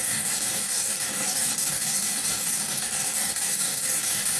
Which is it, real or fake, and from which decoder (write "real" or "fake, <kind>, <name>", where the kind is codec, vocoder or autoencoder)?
fake, codec, DAC